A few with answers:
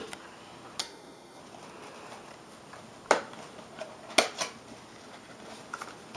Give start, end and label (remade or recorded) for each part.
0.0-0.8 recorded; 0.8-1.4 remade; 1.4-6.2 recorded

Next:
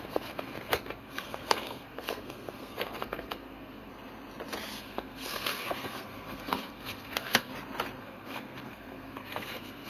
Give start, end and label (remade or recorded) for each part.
0.0-3.9 remade; 3.9-4.8 recorded; 4.8-7.5 remade; 7.5-8.0 recorded; 8.0-9.9 remade

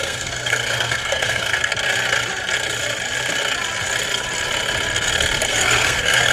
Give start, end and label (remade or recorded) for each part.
0.0-1.7 remade; 1.7-5.5 recorded; 5.5-6.3 remade

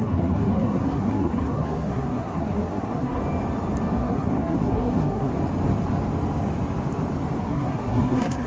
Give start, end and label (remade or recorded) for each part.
0.0-3.2 remade; 3.2-3.9 recorded; 3.9-5.3 remade; 5.3-7.4 recorded; 7.4-8.5 remade